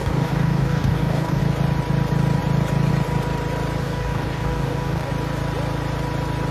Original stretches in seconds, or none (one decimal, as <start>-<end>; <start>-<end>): 1.4-3.8; 5.1-6.5